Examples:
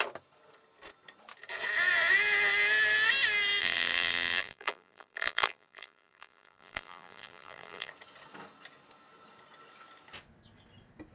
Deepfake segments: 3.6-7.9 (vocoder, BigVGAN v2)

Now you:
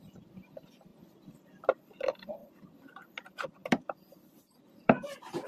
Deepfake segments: 0.9-1.9 (vocoder, BigVGAN v2); 3.6-4.4

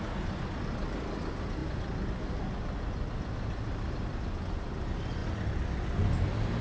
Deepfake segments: none

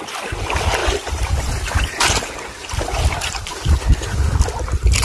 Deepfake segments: 0.8-1.7 (vocoder, BigVGAN v2); 2.6-3.5

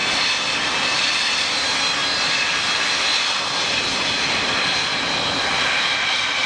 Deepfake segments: 0.5-3.1 (vocoder, BigVGAN v2); 5.4-6.5

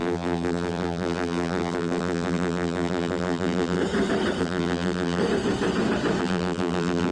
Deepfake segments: 0.0-3.8 (vocoder, BigVGAN v2); 4.4-5.2; 6.2-7.1

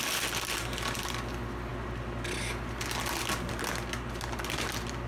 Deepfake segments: none

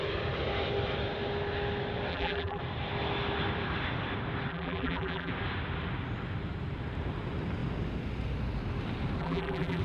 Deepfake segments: 2.1-2.6 (vocoder, BigVGAN v2); 4.5-5.3; 9.2-9.8